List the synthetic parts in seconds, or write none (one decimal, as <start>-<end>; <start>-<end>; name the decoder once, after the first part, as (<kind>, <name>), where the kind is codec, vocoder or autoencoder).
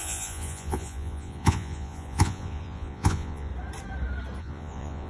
0.0-3.5 (vocoder, Vocos); 4.4-5.1